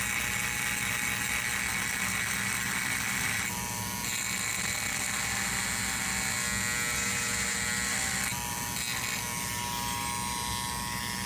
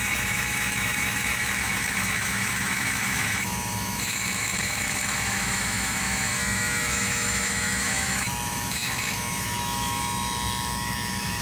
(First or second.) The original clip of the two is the first